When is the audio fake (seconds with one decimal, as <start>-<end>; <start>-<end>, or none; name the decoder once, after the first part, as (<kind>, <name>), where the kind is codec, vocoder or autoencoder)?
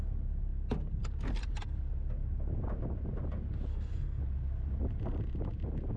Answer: 3.7-4.2 (codec, SNAC)